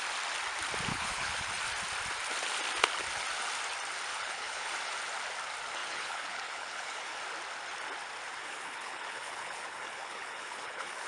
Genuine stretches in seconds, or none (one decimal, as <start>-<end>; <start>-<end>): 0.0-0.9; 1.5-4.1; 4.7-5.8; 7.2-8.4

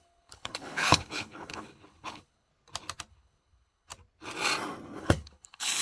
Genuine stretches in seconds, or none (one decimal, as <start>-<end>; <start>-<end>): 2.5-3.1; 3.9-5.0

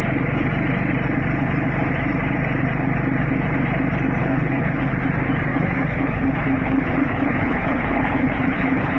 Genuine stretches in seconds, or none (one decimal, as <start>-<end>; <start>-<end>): 0.0-4.2; 4.9-5.5

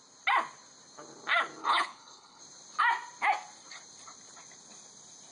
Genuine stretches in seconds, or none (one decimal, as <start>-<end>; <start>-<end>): 0.0-1.6; 2.4-5.3

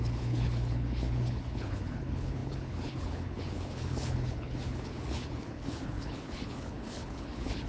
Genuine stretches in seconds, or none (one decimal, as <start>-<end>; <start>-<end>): none

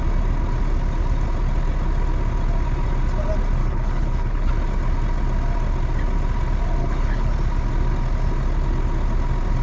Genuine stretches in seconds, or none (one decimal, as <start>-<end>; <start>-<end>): 0.0-3.6; 4.5-6.8; 7.3-9.6

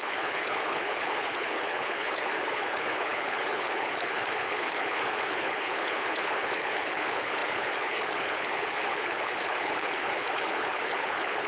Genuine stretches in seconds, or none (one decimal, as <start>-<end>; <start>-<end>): none

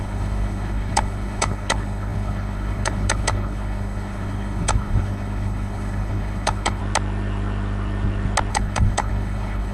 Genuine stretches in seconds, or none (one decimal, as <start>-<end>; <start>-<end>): 6.8-8.5